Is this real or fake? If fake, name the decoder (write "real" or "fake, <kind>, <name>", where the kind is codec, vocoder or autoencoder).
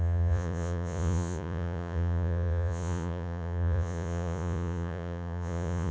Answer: fake, vocoder, Vocos